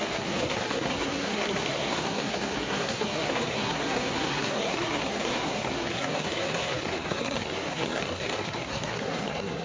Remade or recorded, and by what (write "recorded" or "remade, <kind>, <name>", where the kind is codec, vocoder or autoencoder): remade, codec, SNAC